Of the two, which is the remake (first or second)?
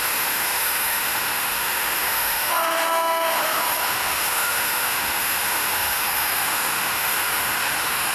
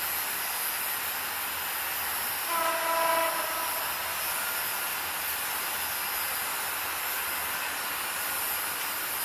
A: first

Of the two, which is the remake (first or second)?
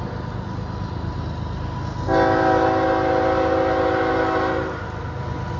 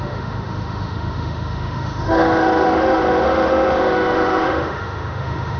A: second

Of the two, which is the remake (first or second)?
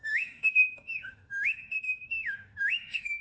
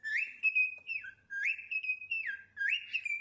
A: first